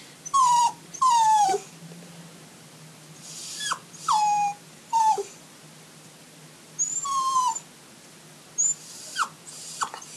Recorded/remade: recorded